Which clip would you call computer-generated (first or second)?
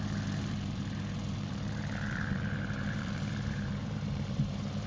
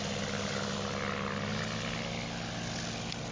first